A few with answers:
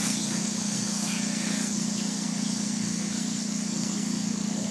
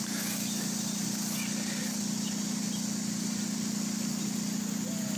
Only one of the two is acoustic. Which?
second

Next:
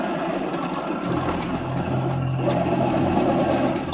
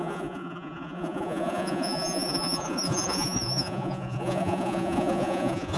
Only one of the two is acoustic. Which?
first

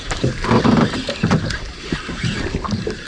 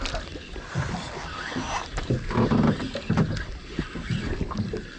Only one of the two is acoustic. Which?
second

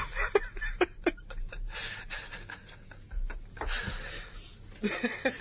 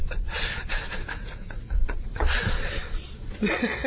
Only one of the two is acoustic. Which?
first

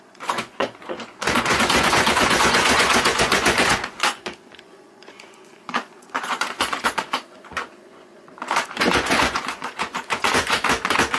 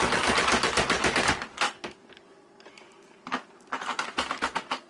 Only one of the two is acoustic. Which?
second